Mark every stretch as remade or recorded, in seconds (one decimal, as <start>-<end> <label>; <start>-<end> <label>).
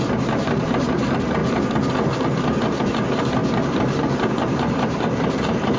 0.0-1.4 remade; 1.4-2.8 recorded; 2.8-5.8 remade